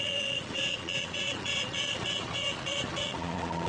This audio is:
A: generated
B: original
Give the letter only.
A